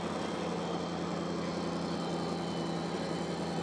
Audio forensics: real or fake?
real